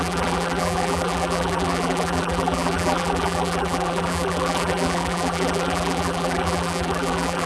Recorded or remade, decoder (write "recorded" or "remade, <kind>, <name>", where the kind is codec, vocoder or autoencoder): remade, vocoder, BigVGAN v2